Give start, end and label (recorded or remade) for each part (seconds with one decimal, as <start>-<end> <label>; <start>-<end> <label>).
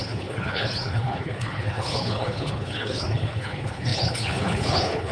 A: 0.0-5.1 remade